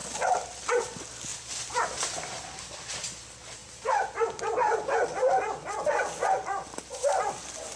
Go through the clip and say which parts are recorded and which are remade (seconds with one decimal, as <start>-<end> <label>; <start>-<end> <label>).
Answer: 0.0-7.8 recorded